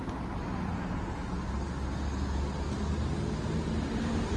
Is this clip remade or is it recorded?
recorded